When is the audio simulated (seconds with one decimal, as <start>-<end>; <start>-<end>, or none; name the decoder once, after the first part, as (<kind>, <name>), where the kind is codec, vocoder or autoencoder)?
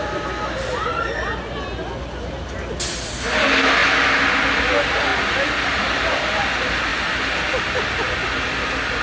none